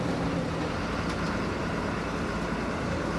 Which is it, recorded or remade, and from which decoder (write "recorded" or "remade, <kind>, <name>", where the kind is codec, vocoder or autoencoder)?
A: recorded